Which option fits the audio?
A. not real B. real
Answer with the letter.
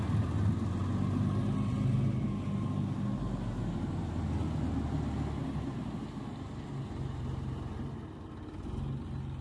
B